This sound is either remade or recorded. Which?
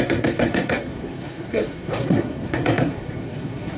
remade